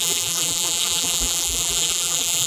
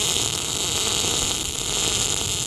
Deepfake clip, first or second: first